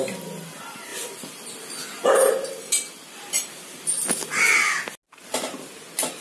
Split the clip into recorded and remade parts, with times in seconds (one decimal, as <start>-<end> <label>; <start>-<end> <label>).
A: 0.0-0.9 recorded; 0.9-2.1 remade; 2.1-6.2 recorded